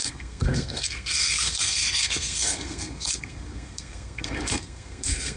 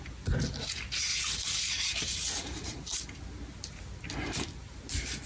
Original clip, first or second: second